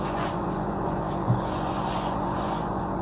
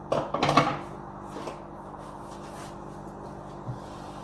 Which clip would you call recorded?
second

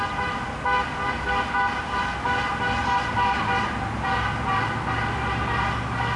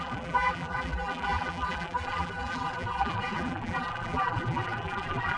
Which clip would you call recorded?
first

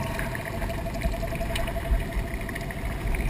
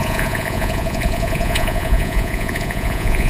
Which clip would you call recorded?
first